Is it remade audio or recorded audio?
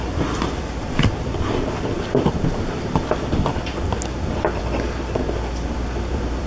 remade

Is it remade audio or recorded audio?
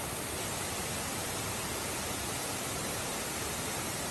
recorded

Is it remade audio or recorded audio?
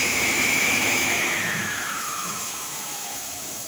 remade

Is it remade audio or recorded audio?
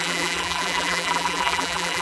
remade